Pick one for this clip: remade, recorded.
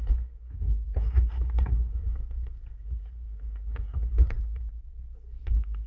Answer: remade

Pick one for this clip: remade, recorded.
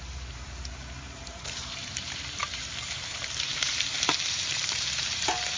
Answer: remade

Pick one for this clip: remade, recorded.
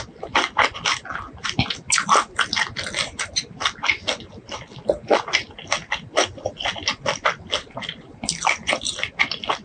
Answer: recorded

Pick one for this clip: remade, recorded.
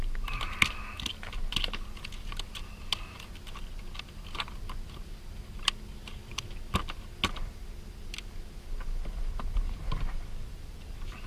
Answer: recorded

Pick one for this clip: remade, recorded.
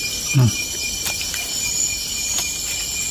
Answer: recorded